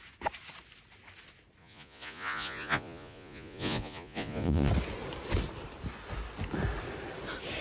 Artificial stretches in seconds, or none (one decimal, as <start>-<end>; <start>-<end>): 1.6-4.7